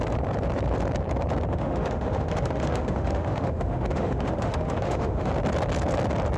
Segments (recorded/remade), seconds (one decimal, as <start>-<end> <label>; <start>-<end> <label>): 0.0-1.5 recorded; 1.5-5.3 remade; 5.3-6.4 recorded